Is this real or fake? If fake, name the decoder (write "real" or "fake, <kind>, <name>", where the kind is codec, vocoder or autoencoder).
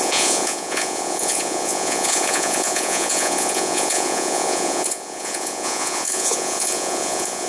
fake, vocoder, Vocos